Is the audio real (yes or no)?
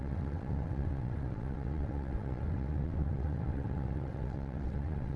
no